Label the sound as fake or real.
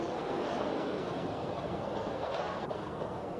fake